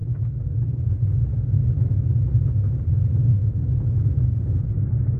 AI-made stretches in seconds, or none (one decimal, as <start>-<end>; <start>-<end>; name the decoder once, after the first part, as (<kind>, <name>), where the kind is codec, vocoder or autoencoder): 3.3-4.7 (vocoder, Vocos)